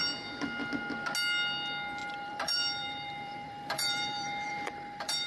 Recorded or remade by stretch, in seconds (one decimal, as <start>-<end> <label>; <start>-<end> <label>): 0.0-2.0 recorded; 2.0-5.3 remade